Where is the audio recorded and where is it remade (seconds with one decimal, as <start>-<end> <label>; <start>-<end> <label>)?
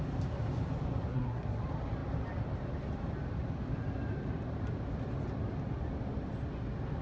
0.0-1.1 recorded; 1.1-1.6 remade; 1.6-7.0 recorded